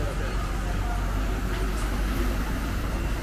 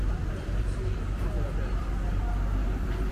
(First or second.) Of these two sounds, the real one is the first